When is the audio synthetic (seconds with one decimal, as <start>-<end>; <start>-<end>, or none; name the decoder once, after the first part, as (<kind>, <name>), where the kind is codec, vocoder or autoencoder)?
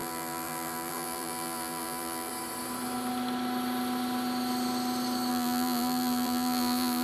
0.0-2.3 (vocoder, BigVGAN v2); 5.3-7.0